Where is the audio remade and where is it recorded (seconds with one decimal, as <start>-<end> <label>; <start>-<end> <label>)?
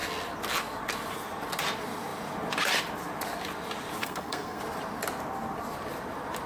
0.0-4.0 recorded; 4.0-4.6 remade; 4.6-6.5 recorded